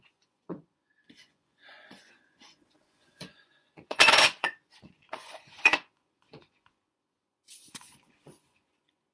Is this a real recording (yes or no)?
no